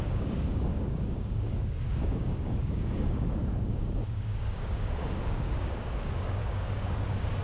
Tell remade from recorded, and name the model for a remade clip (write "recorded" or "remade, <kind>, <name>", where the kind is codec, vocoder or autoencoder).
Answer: remade, codec, DAC